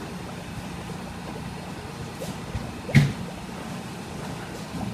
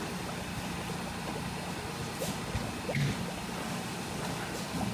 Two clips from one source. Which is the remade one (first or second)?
first